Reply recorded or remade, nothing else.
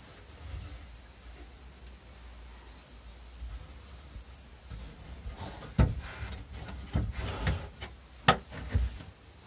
recorded